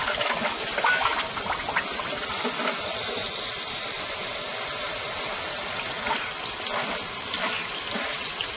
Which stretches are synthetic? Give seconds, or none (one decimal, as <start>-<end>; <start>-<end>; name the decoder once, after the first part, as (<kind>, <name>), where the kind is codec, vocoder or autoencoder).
none